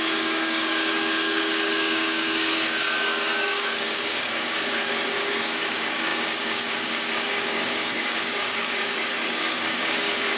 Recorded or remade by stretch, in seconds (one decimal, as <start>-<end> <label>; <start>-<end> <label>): 0.0-10.4 remade